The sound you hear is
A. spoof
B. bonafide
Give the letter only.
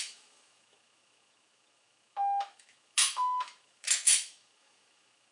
A